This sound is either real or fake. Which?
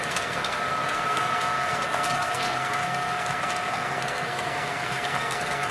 fake